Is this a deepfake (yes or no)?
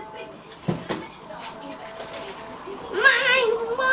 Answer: no